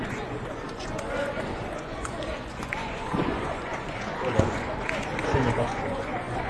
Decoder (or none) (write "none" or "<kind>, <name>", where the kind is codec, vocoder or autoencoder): vocoder, Vocos